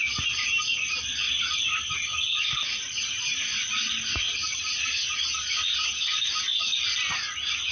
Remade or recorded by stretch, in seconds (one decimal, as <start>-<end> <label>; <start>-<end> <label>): 0.0-7.7 recorded

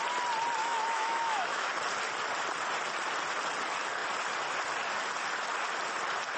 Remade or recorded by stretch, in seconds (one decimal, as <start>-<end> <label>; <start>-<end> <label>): 0.0-0.6 recorded; 0.6-1.7 remade; 1.7-6.4 recorded

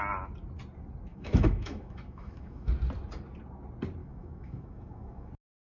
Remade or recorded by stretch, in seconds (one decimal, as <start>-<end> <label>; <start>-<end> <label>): 0.0-1.1 recorded; 1.1-2.7 remade; 2.7-4.0 recorded; 4.0-5.3 remade; 5.3-5.7 recorded